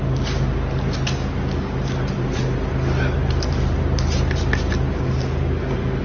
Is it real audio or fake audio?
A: real